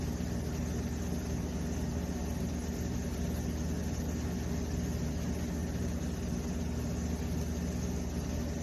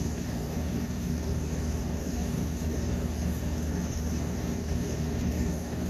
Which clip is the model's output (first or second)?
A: second